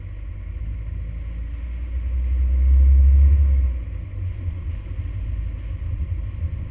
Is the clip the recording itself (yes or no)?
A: yes